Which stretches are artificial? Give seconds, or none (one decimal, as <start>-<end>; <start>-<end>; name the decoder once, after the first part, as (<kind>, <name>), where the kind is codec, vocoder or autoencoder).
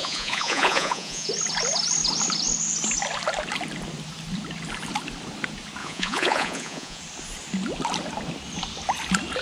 0.0-1.3 (vocoder, Vocos); 5.8-7.0